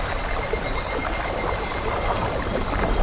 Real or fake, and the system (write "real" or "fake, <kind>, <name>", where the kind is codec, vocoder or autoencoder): fake, vocoder, BigVGAN v2